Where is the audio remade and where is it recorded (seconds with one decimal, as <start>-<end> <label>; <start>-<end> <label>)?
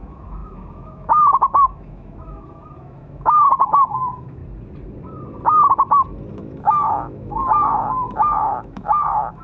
0.0-4.4 remade; 4.4-6.3 recorded; 6.3-9.4 remade